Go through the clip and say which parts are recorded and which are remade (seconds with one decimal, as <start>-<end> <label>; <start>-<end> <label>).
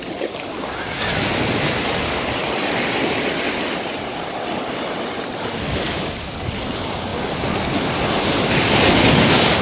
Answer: 0.0-0.6 recorded; 0.6-1.1 remade; 1.1-9.6 recorded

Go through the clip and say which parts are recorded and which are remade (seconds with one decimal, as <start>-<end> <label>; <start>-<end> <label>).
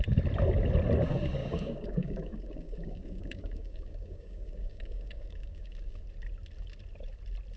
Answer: 0.0-1.4 recorded; 1.4-6.0 remade; 6.0-7.6 recorded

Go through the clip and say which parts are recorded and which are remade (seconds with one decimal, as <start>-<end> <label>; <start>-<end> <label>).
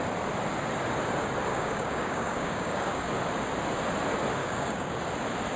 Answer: 0.0-1.5 recorded; 1.5-3.1 remade; 3.1-4.4 recorded; 4.4-5.0 remade; 5.0-5.6 recorded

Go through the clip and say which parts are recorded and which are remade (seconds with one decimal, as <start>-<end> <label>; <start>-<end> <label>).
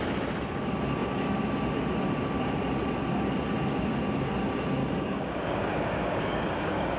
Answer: 0.0-4.8 recorded; 4.8-7.0 remade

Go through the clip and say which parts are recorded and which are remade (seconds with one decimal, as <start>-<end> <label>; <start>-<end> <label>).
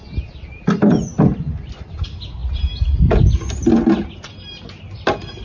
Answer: 0.0-5.4 recorded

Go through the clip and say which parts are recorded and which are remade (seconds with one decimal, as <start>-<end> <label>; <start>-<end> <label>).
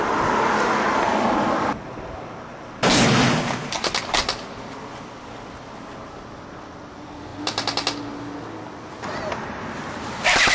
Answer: 0.0-10.5 recorded